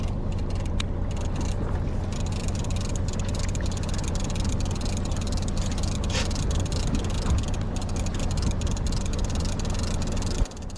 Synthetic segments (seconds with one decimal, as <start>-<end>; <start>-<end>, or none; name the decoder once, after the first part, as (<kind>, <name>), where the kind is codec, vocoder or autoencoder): none